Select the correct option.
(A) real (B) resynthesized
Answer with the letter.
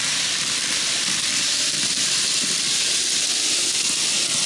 B